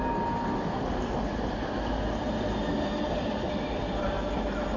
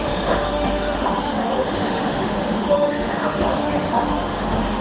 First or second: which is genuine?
first